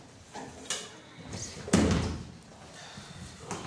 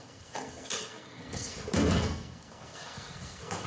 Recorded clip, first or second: first